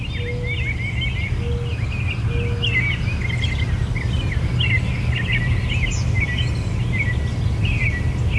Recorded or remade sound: recorded